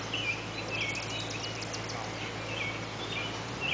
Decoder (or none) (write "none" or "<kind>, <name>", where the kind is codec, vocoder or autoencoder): none